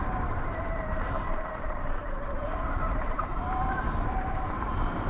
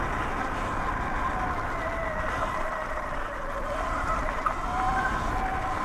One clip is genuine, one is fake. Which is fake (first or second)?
first